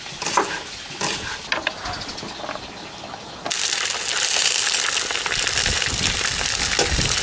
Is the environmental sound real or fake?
real